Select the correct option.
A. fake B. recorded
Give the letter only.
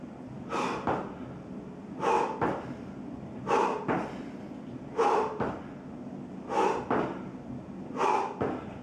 B